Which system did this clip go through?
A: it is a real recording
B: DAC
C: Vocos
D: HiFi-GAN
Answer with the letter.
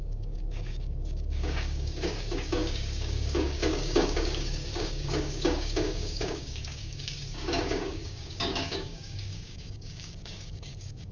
B